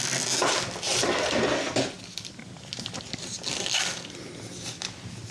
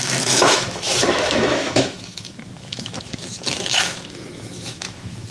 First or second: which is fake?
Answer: second